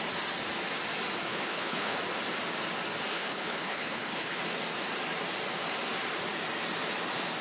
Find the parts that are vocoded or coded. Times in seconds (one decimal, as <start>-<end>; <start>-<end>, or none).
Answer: 1.3-2.0; 3.1-4.4